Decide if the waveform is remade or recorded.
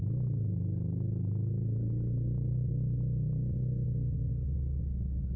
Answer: recorded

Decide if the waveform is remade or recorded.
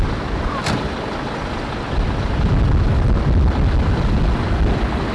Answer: recorded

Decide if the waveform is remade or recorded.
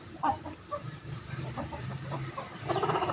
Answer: remade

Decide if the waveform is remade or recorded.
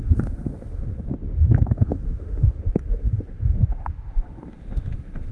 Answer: remade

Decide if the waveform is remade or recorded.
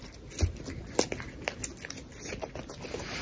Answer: recorded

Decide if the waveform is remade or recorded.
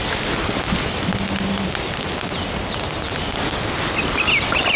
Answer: recorded